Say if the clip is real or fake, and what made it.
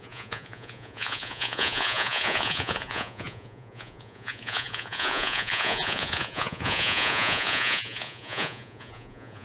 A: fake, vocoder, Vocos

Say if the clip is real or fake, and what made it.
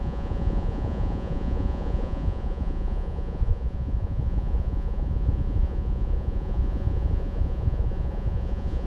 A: fake, vocoder, Vocos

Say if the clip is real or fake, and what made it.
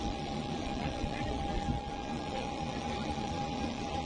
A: fake, vocoder, Vocos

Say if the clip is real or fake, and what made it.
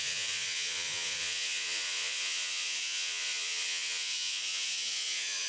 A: fake, vocoder, Vocos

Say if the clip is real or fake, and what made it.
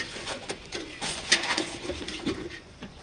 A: fake, vocoder, Vocos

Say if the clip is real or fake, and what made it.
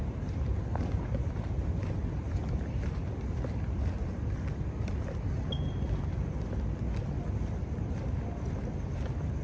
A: real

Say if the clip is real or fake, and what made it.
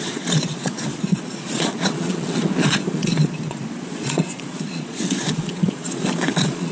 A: fake, vocoder, Vocos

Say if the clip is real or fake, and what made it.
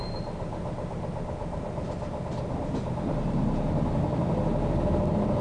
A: real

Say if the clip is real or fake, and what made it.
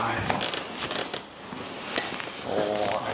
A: real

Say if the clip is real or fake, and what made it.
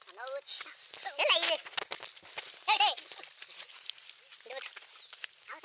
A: real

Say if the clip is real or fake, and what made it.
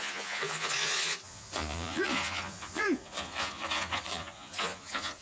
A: fake, vocoder, Vocos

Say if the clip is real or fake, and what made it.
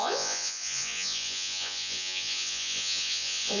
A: fake, vocoder, Vocos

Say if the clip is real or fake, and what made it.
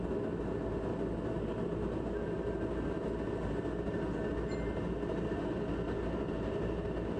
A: real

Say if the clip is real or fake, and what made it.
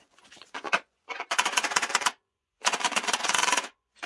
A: fake, vocoder, Vocos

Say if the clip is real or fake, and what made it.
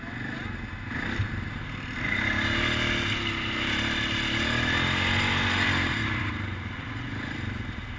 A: real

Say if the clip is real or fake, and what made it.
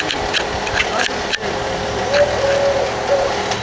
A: real